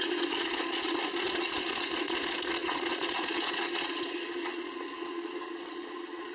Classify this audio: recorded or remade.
remade